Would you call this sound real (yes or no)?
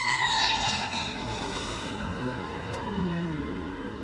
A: no